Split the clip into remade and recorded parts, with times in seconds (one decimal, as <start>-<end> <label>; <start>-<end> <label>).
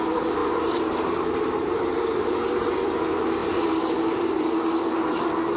0.0-0.4 recorded; 0.4-2.7 remade; 2.7-3.4 recorded; 3.4-4.4 remade; 4.4-5.6 recorded